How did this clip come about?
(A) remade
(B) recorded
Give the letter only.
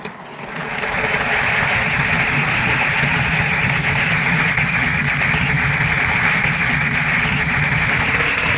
B